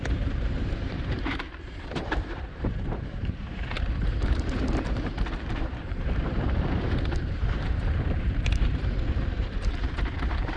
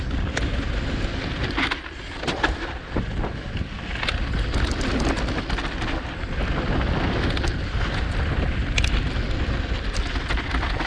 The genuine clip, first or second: second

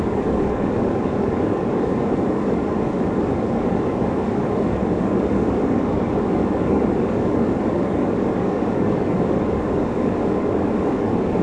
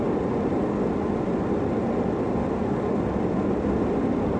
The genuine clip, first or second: second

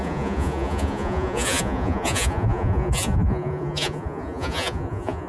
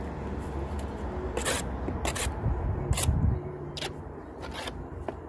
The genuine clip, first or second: second